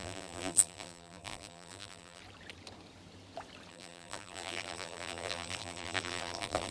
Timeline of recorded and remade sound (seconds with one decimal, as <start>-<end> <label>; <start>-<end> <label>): 0.0-2.2 remade; 2.2-3.7 recorded; 3.7-6.7 remade